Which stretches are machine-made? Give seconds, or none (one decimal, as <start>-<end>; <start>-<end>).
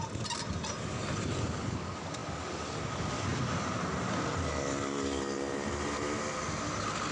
none